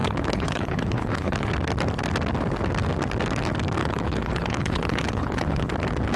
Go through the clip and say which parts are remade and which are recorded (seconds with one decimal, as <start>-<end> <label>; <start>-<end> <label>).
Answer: 0.0-1.5 remade; 1.5-3.8 recorded; 3.8-5.7 remade; 5.7-6.2 recorded